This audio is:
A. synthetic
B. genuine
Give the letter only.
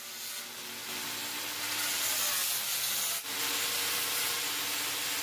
B